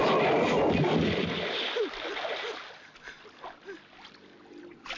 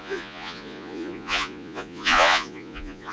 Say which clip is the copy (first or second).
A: second